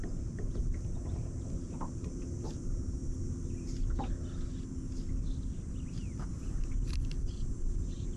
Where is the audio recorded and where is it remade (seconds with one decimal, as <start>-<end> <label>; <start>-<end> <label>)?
0.0-3.0 remade; 3.0-7.3 recorded; 7.3-8.2 remade